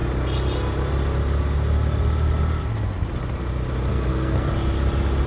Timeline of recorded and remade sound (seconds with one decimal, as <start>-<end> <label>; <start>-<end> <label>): 0.0-3.9 recorded; 3.9-4.5 remade; 4.5-5.3 recorded